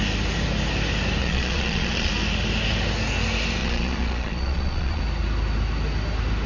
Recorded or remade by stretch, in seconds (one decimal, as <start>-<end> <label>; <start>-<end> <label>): 0.0-1.2 recorded; 1.2-2.1 remade; 2.1-3.6 recorded; 3.6-5.0 remade; 5.0-6.5 recorded